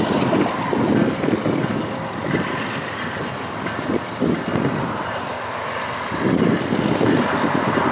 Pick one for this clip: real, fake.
real